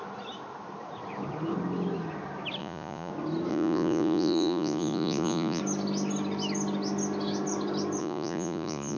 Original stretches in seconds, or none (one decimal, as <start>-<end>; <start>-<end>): 0.0-2.6; 3.1-3.5; 5.6-8.0